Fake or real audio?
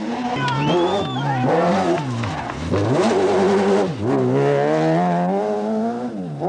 real